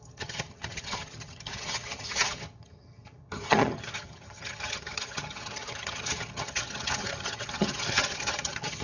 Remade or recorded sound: remade